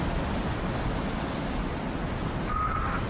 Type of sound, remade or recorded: recorded